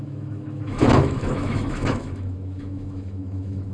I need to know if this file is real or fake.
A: fake